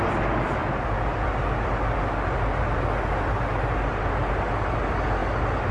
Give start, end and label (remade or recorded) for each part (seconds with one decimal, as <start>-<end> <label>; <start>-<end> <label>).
0.0-5.7 recorded